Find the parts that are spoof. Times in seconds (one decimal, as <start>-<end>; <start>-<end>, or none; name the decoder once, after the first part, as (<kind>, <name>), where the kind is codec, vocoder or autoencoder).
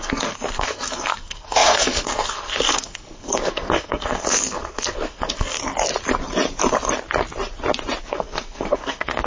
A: 0.0-5.6 (codec, SNAC); 8.0-9.3